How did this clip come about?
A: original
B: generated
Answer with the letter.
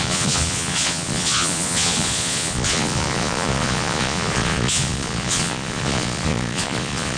B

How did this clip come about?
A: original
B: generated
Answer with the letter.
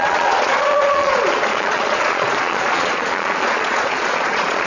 B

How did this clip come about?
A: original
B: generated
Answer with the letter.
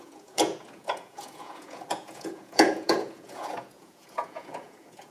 B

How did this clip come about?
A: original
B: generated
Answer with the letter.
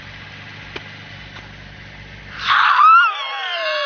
A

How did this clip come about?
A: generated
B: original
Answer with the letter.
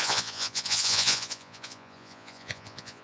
A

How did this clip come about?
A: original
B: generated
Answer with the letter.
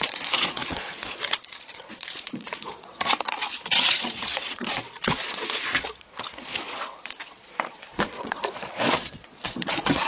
B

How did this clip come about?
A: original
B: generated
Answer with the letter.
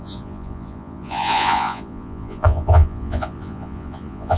B